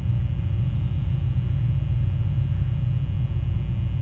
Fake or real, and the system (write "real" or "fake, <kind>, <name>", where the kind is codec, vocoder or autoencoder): real